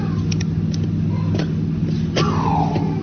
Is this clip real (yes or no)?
yes